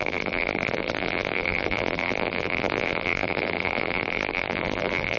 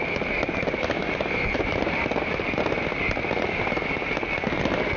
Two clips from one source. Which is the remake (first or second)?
first